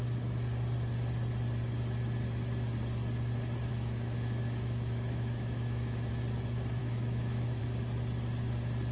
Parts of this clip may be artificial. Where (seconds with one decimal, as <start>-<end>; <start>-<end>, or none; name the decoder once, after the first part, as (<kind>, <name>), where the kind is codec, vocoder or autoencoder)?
3.7-6.1 (autoencoder, DAC-VAE); 6.8-7.6